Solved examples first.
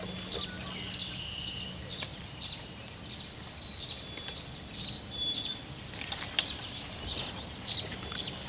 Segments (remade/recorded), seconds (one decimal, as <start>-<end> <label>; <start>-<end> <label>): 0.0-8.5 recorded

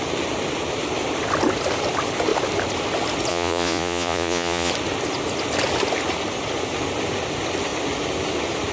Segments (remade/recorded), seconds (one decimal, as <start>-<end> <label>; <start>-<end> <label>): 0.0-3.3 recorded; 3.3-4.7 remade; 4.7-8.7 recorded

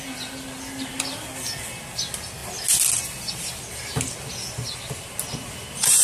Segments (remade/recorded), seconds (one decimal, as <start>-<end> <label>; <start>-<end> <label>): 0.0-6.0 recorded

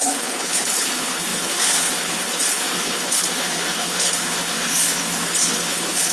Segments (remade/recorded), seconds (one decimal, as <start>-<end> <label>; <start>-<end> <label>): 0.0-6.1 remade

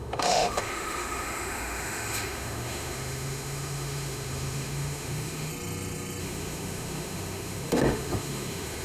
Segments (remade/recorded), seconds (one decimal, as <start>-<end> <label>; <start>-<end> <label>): 0.0-5.5 remade; 5.5-6.2 recorded; 6.2-8.8 remade